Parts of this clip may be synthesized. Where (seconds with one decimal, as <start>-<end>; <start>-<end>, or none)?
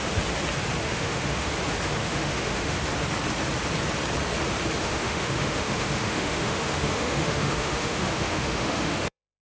0.8-1.5; 2.0-2.8; 4.8-9.4